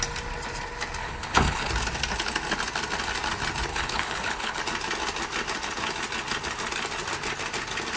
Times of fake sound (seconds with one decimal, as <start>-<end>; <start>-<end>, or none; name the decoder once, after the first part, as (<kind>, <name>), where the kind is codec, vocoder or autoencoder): 1.0-1.7 (codec, HILCodec); 3.7-4.6